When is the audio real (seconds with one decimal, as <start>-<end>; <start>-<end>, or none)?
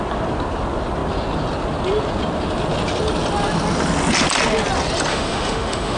0.0-5.1